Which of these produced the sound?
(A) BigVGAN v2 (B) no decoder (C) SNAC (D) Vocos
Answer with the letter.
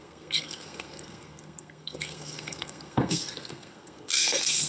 C